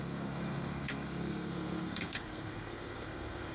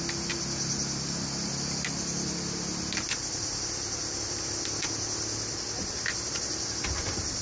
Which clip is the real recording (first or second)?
second